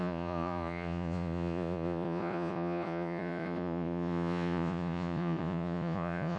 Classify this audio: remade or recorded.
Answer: remade